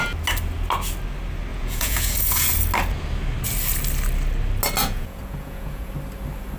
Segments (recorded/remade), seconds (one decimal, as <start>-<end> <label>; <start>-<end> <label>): 0.0-1.5 recorded; 1.5-2.6 remade; 2.6-4.8 recorded; 4.8-5.9 remade; 5.9-6.6 recorded